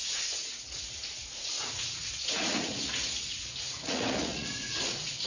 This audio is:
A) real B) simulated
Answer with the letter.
B